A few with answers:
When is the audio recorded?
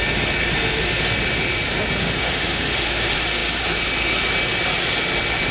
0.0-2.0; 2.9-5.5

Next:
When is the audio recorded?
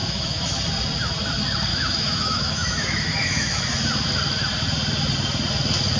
0.6-1.7; 3.6-6.0